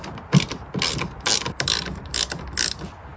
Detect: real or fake real